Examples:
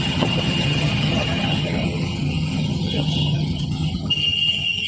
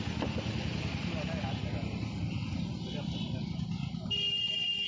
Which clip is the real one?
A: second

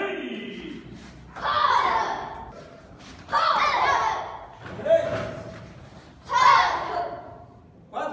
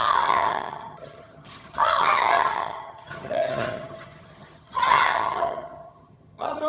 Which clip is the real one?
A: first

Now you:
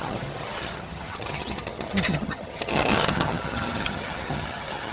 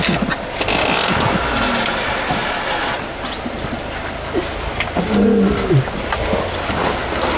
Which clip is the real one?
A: second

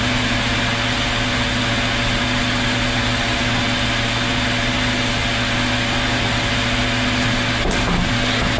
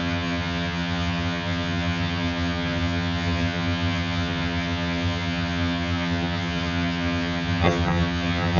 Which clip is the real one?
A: first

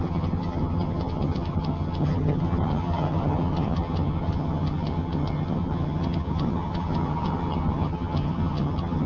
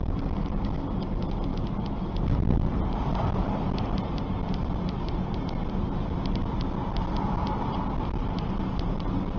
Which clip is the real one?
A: second